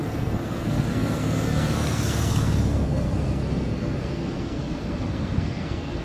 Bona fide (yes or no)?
no